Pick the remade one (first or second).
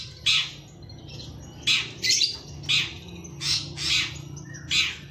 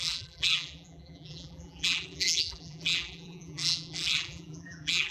second